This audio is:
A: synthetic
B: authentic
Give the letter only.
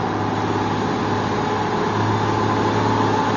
B